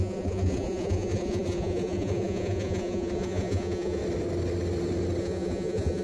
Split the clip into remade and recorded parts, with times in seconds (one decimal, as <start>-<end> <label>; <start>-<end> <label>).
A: 0.0-4.0 remade; 4.0-5.2 recorded; 5.2-6.0 remade